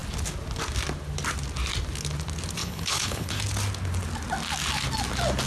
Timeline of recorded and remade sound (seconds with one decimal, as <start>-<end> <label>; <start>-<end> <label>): 0.0-2.6 recorded; 2.6-3.4 remade; 3.4-5.5 recorded

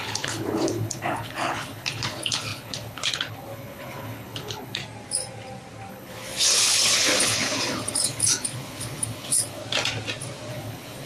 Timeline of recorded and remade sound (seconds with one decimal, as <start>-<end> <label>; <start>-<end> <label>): 0.0-4.8 remade; 4.8-5.9 recorded; 5.9-9.6 remade; 9.6-10.5 recorded; 10.5-11.1 remade

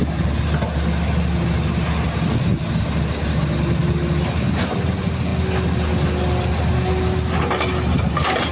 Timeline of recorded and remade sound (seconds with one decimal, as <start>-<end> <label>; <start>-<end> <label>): 0.0-8.5 recorded